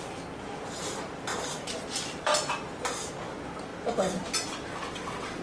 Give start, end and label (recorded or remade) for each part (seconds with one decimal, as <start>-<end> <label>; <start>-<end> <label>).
0.0-4.7 recorded; 4.7-5.4 remade